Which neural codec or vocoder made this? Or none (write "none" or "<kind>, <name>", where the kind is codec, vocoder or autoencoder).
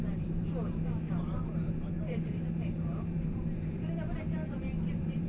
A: vocoder, BigVGAN v2